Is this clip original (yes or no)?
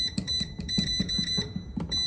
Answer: no